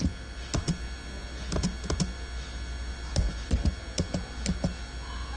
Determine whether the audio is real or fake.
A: real